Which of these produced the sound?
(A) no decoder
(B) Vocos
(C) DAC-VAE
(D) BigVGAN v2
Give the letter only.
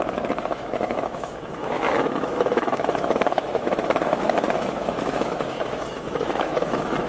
C